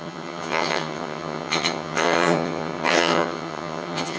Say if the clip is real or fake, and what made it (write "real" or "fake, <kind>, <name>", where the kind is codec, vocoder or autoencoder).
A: fake, vocoder, HiFi-GAN